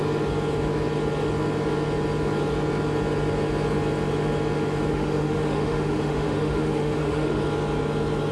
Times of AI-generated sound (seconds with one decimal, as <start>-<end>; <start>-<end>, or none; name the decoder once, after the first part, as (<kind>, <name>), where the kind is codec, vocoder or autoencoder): 4.9-7.4 (autoencoder, DAC-VAE)